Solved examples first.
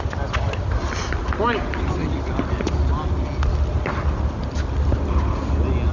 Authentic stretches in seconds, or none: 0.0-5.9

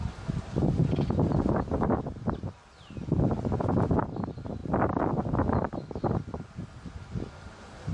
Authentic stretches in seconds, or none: 0.0-0.8; 2.4-7.9

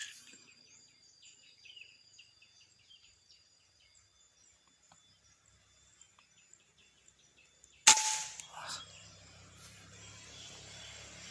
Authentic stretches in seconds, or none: 4.2-8.2; 10.1-11.3

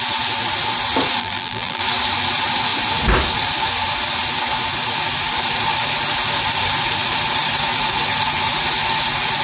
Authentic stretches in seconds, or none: 0.0-1.2; 1.8-9.4